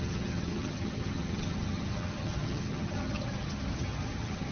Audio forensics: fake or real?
fake